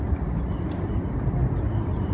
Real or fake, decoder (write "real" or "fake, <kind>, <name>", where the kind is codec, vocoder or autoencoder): real